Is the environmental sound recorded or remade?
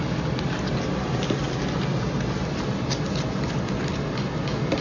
recorded